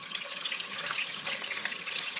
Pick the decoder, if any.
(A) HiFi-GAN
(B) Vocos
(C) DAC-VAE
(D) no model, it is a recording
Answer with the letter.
A